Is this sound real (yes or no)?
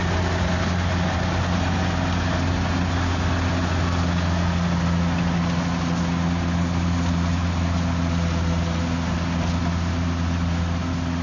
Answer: yes